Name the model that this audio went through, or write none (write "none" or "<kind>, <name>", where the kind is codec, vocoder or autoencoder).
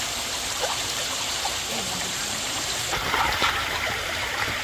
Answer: vocoder, BigVGAN v2